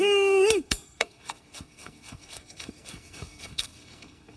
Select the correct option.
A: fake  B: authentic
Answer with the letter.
A